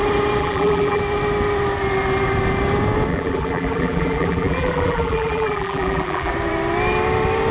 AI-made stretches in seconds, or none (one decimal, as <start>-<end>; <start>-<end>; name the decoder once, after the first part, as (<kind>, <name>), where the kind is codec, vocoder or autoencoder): 0.4-1.0 (vocoder, BigVGAN v2); 3.1-6.3